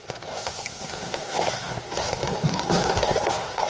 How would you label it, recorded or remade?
remade